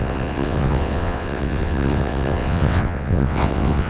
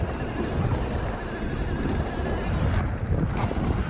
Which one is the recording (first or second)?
second